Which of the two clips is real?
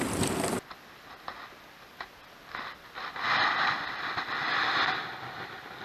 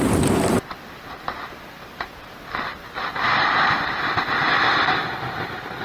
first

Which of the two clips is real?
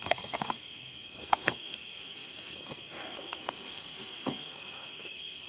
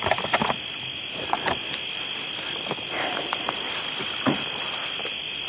second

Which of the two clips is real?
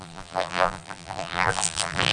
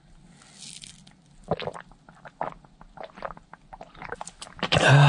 second